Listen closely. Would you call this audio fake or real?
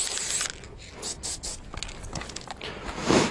real